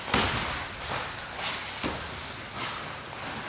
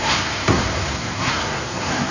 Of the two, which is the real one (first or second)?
first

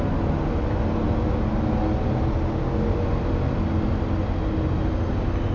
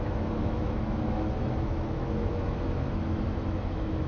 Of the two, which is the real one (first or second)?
first